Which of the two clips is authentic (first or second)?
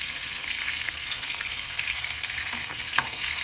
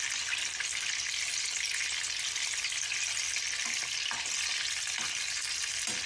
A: second